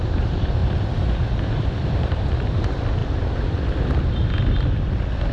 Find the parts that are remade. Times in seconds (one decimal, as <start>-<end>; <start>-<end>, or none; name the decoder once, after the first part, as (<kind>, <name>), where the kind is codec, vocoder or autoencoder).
0.6-2.5 (vocoder, BigVGAN v2)